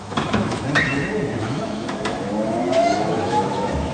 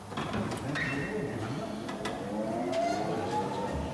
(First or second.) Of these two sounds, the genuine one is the second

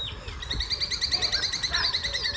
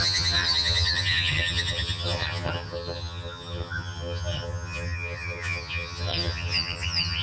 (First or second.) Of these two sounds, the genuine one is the first